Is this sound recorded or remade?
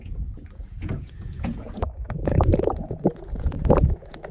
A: remade